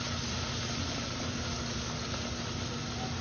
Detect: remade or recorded recorded